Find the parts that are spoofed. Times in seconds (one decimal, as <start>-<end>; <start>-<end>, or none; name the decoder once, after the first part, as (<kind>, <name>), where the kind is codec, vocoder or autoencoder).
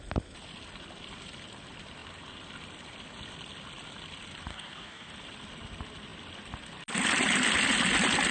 4.5-5.1 (codec, DAC)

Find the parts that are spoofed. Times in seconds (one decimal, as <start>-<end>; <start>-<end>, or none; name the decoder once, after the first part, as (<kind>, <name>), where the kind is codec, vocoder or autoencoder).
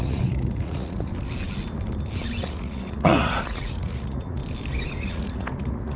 0.0-1.1 (vocoder, Vocos); 2.4-4.4; 5.0-6.0